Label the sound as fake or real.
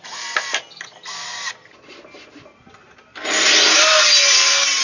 real